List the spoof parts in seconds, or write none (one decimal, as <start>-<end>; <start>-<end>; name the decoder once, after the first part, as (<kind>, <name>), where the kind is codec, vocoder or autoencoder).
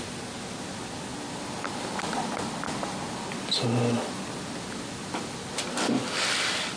none